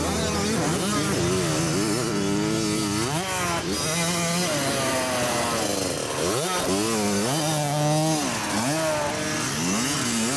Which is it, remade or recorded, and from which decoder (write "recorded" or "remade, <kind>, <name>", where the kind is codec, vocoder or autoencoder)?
recorded